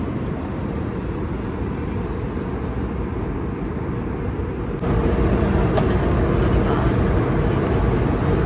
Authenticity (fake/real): real